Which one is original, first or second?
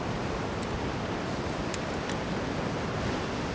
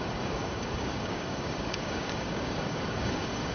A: first